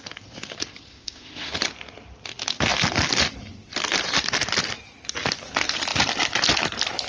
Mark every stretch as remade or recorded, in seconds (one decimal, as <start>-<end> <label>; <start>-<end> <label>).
0.0-0.9 recorded; 0.9-1.5 remade; 1.5-7.1 recorded